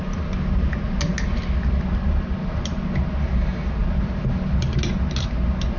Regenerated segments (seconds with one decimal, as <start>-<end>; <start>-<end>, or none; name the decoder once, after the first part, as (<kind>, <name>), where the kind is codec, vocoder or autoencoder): none